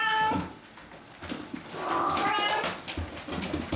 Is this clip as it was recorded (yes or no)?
yes